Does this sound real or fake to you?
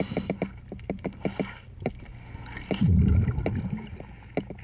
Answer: real